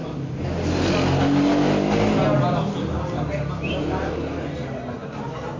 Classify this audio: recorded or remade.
recorded